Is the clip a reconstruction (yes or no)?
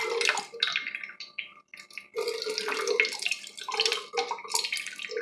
no